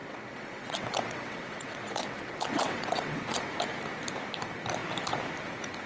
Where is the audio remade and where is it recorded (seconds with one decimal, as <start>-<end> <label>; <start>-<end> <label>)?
0.0-3.5 remade; 3.5-5.9 recorded